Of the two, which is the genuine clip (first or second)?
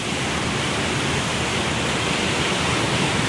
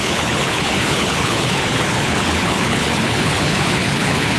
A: first